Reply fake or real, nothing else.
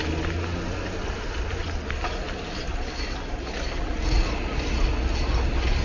real